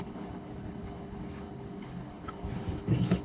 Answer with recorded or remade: remade